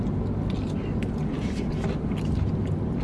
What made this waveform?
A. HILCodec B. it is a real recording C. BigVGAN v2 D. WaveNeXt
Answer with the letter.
B